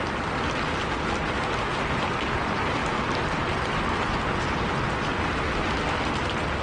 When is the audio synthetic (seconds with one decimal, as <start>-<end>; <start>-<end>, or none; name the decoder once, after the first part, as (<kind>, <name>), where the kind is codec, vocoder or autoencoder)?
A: none